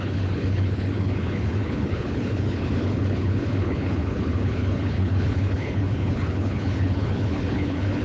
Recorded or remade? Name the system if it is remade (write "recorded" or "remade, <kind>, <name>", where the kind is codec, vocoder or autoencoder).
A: remade, codec, HILCodec